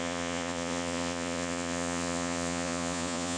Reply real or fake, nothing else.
fake